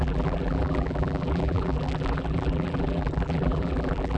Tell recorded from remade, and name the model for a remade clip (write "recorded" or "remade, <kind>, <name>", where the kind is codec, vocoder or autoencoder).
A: remade, vocoder, BigVGAN v2